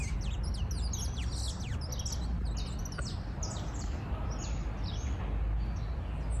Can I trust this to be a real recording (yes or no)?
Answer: yes